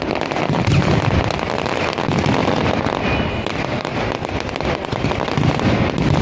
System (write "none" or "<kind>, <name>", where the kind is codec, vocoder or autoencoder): none